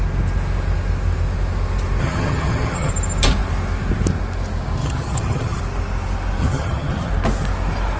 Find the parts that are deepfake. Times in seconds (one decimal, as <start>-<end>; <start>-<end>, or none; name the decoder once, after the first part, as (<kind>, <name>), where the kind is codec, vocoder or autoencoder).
2.0-2.9 (vocoder, HiFi-GAN); 4.8-5.6; 6.4-7.1